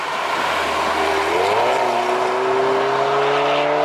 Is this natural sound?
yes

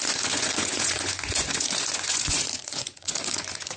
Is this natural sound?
no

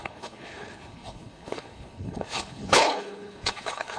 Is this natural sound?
no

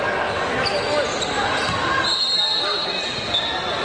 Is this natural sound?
yes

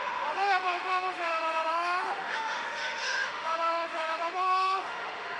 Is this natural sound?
no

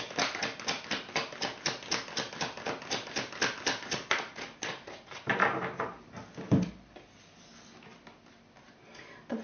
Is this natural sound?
yes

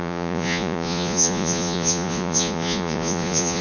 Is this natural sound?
no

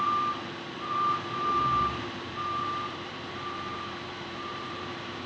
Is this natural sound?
no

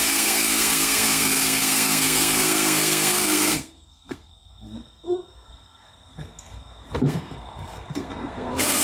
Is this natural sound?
no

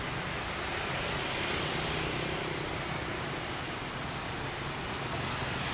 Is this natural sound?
yes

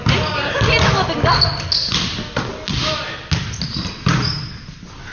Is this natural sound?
yes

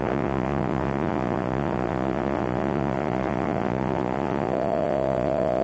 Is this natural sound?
no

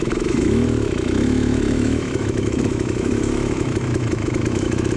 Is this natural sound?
no